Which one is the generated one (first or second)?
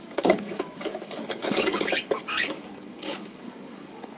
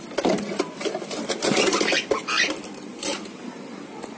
first